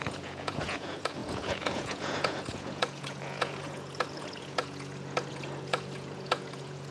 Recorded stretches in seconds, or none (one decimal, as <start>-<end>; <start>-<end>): none